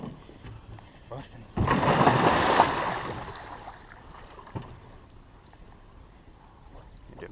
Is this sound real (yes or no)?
yes